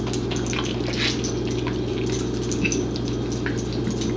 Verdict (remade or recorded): recorded